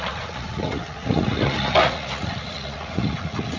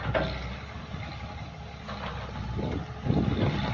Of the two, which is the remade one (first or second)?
first